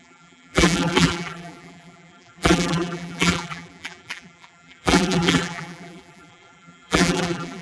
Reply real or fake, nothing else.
fake